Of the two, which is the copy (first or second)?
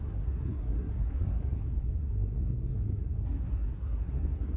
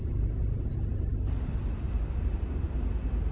first